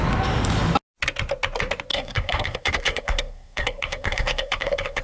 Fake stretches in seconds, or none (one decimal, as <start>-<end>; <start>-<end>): 1.9-5.0